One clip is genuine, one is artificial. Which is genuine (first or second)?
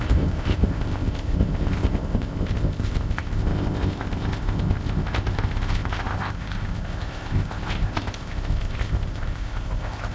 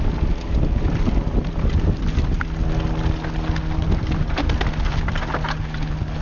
second